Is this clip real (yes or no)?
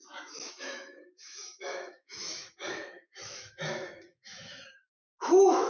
no